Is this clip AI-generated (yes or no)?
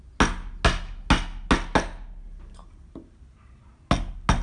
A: no